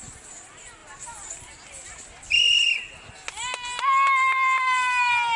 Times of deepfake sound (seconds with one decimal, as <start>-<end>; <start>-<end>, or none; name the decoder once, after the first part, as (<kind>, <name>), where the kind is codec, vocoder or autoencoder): none